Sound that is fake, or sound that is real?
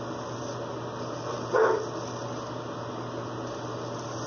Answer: real